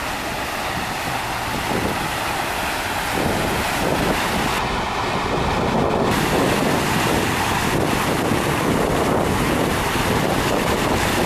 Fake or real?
real